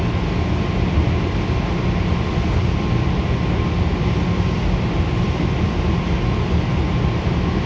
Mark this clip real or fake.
real